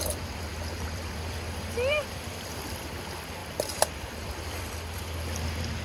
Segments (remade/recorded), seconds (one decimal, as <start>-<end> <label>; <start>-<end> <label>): 0.0-0.5 recorded; 0.5-2.8 remade; 2.8-3.4 recorded; 3.4-5.0 remade; 5.0-5.8 recorded